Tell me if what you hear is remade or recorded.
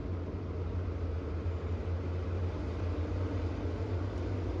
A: recorded